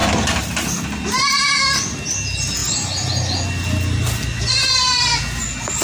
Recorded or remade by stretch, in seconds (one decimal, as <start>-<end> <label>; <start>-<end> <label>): 0.0-0.8 remade; 0.8-5.8 recorded